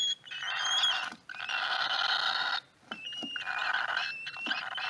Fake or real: real